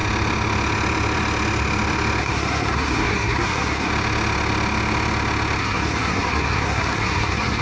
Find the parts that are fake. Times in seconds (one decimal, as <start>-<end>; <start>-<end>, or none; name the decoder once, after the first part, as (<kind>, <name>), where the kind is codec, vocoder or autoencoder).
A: 2.2-3.9 (codec, SNAC); 5.6-7.6